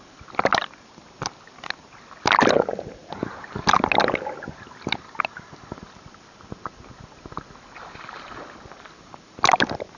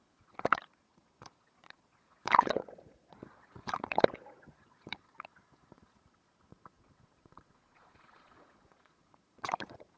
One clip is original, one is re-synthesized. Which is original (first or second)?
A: first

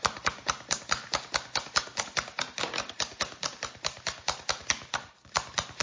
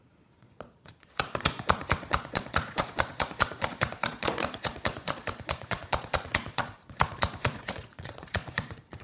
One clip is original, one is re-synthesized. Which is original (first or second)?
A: first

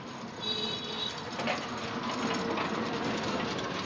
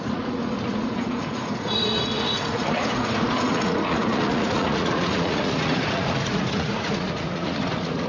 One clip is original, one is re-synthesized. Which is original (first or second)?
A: first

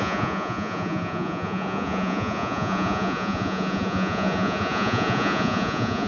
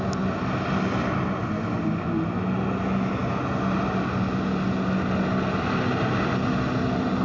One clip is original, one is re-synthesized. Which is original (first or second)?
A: second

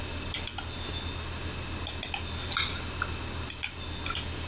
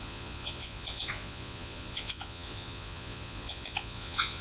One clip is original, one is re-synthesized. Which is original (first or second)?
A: first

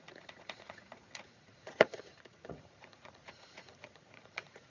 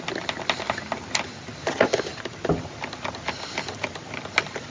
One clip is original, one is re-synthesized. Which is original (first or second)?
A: second